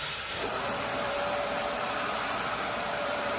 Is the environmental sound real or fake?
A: fake